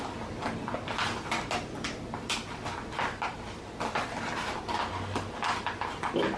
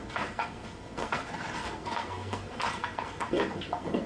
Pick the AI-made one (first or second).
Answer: second